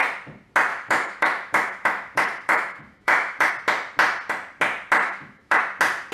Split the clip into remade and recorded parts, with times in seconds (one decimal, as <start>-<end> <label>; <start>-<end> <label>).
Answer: 0.0-0.7 recorded; 0.7-3.5 remade; 3.5-5.0 recorded; 5.0-5.6 remade; 5.6-6.1 recorded